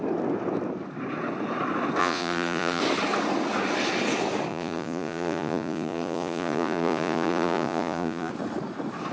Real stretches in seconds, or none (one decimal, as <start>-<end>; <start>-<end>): 0.0-2.0; 2.8-4.5; 8.3-9.1